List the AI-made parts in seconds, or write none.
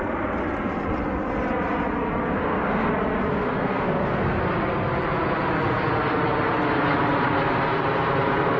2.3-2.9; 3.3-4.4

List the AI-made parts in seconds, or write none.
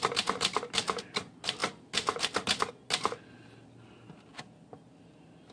none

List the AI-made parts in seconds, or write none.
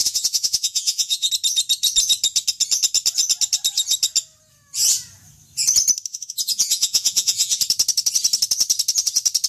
0.0-1.3; 6.1-7.6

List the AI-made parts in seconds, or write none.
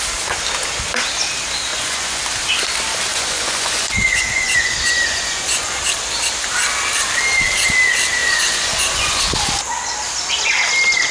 1.7-2.2; 3.1-5.8; 8.2-9.2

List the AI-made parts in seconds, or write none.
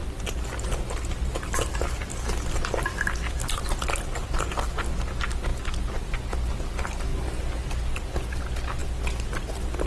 none